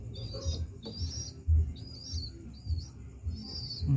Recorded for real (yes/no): yes